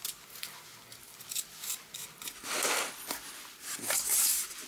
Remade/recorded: recorded